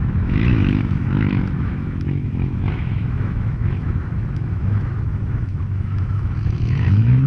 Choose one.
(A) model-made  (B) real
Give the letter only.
A